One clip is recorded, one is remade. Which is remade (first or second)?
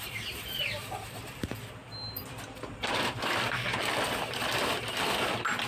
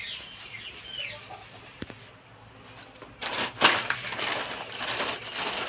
first